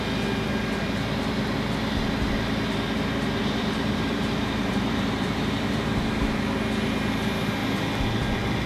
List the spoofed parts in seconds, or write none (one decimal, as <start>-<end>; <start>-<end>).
3.4-6.1